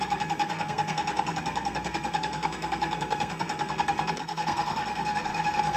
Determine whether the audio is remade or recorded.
remade